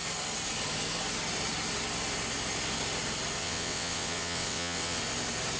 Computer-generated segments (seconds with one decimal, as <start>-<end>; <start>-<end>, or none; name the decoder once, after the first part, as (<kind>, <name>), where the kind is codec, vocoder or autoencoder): 3.4-5.0 (vocoder, WaveNeXt)